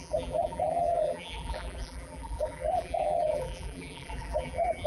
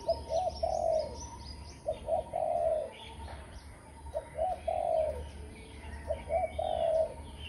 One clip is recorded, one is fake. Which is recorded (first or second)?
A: second